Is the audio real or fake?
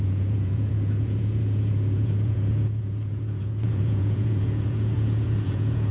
fake